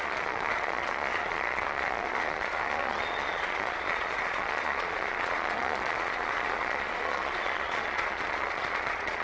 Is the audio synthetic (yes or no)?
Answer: yes